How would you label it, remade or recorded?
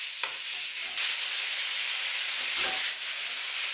recorded